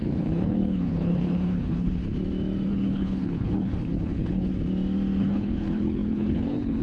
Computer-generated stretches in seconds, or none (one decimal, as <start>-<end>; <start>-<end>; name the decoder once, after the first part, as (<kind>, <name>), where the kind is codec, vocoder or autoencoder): 0.0-2.0 (codec, HILCodec); 2.7-4.5; 5.2-6.8